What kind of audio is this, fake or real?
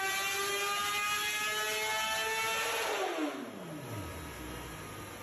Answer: real